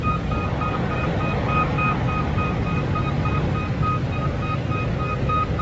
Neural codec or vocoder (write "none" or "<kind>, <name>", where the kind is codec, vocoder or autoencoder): none